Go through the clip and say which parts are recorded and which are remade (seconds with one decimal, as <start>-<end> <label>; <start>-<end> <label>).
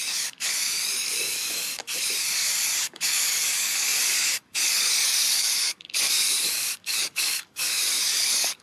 0.0-8.6 remade